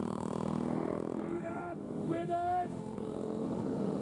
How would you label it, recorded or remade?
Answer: remade